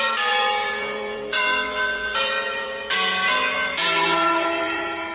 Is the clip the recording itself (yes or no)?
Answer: no